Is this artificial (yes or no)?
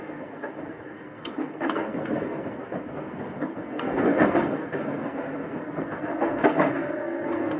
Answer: yes